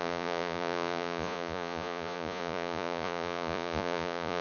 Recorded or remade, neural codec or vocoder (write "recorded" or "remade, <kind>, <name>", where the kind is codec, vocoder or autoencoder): remade, vocoder, Vocos